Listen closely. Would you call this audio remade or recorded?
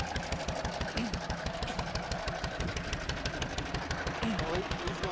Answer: recorded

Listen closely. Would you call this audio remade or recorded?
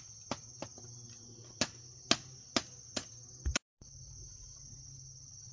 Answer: recorded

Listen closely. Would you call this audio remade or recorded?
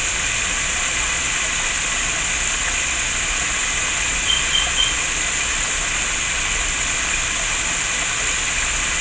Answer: remade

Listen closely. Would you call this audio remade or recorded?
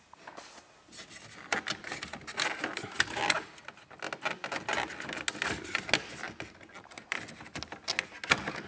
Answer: recorded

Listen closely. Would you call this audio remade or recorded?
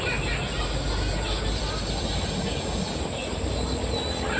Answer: recorded